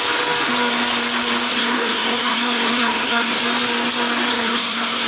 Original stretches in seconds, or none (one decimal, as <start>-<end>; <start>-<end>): 0.0-1.5; 3.4-4.3